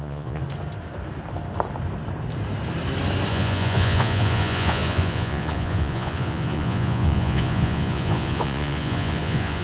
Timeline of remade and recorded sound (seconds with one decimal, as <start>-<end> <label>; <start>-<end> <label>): 0.0-0.4 remade; 0.4-3.3 recorded; 3.3-9.6 remade

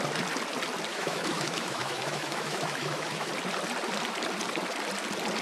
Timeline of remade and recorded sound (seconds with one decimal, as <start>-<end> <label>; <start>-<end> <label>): 0.0-0.9 recorded; 0.9-3.3 remade; 3.3-5.4 recorded

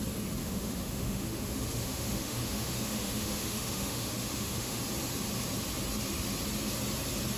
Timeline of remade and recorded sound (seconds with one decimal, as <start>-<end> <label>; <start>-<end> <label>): 0.0-0.4 recorded; 0.4-4.8 remade; 4.8-7.4 recorded

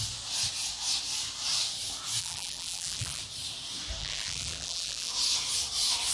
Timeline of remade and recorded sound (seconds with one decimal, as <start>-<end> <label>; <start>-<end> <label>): 0.0-2.2 recorded; 2.2-3.2 remade; 3.2-4.0 recorded; 4.0-5.1 remade; 5.1-6.1 recorded